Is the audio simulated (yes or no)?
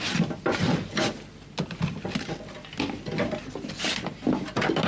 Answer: no